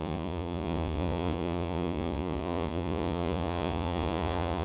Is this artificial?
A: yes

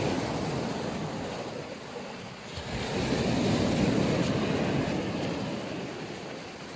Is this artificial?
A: no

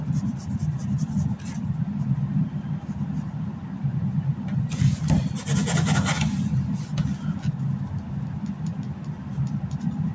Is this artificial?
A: no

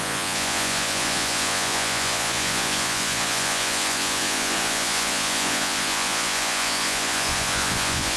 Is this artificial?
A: yes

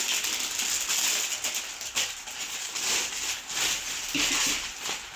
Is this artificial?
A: no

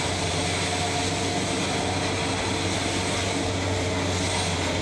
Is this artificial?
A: no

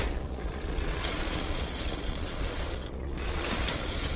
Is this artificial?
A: yes